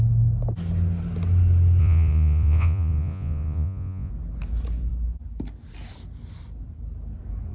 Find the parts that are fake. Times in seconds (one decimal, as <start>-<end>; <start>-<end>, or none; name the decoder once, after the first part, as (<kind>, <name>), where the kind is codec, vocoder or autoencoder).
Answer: 1.8-4.1 (vocoder, Vocos)